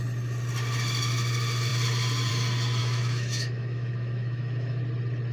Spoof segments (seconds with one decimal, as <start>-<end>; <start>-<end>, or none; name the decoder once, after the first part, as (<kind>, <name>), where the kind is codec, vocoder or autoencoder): 2.8-4.8 (autoencoder, DAC-VAE)